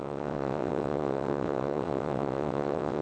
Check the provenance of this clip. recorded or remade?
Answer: remade